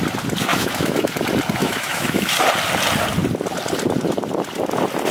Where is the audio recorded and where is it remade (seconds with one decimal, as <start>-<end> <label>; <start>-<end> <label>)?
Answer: 0.0-0.5 recorded; 0.5-1.1 remade; 1.1-1.6 recorded; 1.6-2.3 remade; 2.3-5.1 recorded